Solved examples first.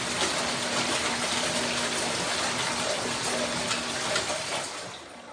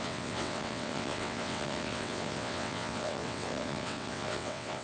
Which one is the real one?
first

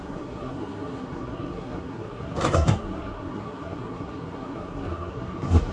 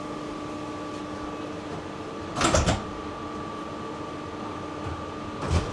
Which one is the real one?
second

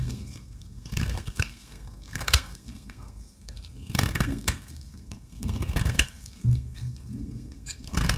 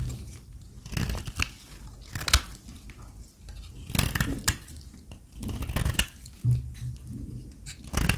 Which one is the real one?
second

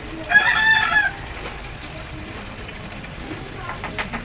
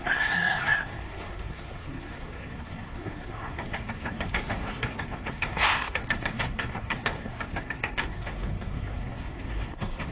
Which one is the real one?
first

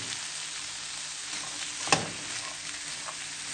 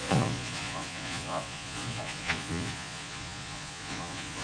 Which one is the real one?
first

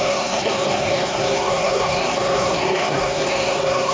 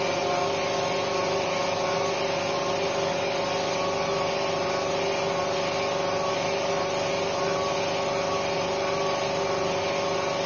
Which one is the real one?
second